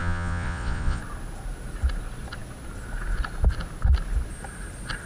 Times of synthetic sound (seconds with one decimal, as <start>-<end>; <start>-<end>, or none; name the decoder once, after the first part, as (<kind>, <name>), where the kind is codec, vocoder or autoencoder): 0.0-1.0 (vocoder, Vocos)